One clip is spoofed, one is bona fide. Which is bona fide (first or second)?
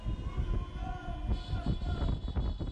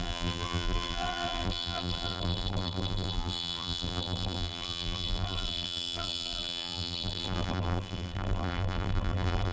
first